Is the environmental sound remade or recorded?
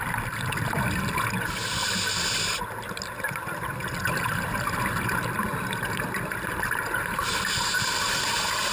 recorded